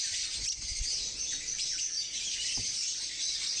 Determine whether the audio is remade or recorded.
recorded